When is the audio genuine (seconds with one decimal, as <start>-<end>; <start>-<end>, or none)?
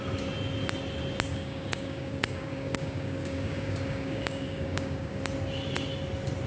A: 0.0-1.3; 5.2-6.5